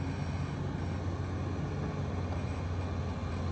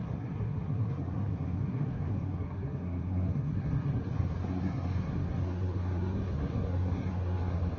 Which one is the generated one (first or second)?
second